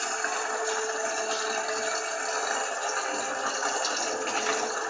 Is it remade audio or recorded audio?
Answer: recorded